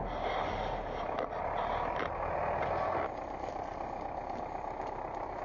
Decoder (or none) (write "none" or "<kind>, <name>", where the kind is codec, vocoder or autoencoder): none